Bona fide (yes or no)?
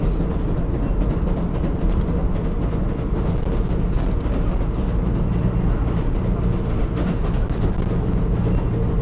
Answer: yes